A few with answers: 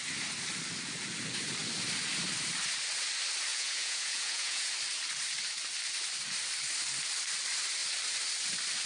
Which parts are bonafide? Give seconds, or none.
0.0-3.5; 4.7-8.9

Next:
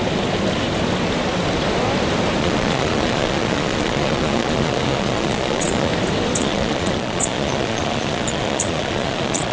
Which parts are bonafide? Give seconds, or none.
0.0-2.4; 5.9-6.4